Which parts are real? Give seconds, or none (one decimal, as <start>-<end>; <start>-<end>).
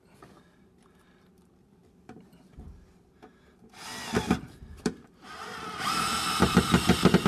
1.8-4.4